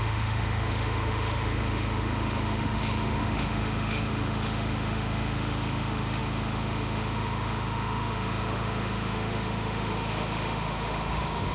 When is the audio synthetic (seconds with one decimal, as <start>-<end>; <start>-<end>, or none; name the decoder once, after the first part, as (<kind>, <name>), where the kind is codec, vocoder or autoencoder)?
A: 0.0-11.5 (autoencoder, DAC-VAE)